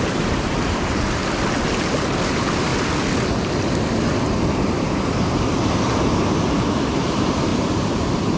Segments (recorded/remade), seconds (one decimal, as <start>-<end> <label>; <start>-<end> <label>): 0.0-1.2 remade; 1.2-2.2 recorded; 2.2-2.7 remade; 2.7-4.6 recorded; 4.6-8.4 remade